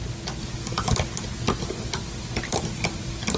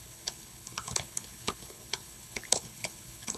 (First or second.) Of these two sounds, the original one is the first